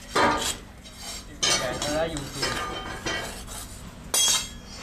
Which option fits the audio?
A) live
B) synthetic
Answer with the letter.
A